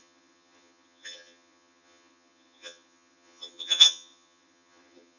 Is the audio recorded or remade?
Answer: remade